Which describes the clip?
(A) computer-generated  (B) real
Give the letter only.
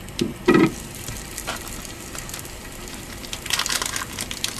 A